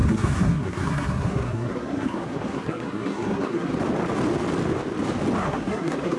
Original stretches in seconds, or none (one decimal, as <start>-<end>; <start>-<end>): 3.7-5.4